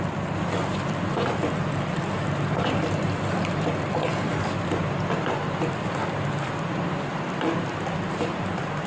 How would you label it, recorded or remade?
remade